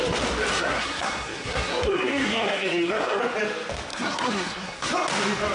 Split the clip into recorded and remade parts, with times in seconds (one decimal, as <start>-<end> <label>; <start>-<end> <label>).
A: 0.0-0.5 recorded; 0.5-3.2 remade; 3.2-3.9 recorded; 3.9-4.9 remade; 4.9-5.5 recorded